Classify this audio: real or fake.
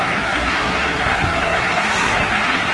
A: fake